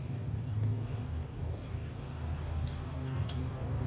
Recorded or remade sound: remade